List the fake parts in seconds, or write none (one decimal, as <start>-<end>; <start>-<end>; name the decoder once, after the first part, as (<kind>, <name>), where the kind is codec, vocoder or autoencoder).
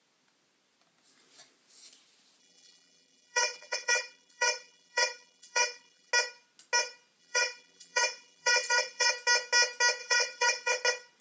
2.4-6.1 (vocoder, BigVGAN v2); 7.2-9.1; 10.0-10.7